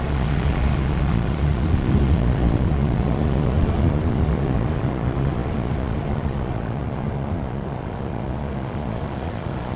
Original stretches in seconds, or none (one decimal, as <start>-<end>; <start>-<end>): none

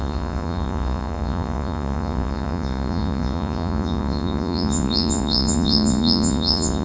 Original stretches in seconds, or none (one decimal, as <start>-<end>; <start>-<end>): none

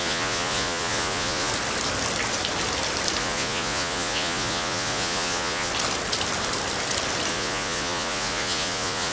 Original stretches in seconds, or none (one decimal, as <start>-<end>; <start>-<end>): 1.5-3.2; 5.7-7.3

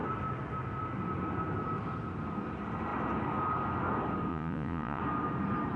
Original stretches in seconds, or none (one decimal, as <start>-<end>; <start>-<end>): 0.0-4.3; 5.0-5.8

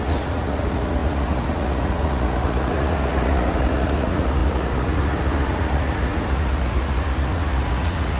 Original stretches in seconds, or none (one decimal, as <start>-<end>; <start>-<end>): none